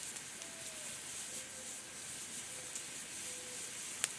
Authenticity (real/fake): real